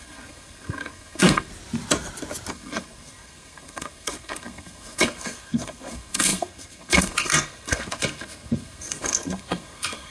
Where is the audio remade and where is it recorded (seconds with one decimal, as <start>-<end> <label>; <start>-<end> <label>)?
0.0-1.5 remade; 1.5-2.5 recorded; 2.5-10.1 remade